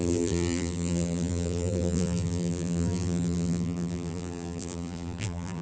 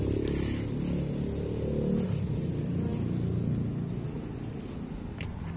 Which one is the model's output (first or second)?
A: first